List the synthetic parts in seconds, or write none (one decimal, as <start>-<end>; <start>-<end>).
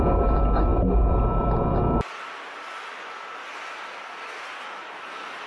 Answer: none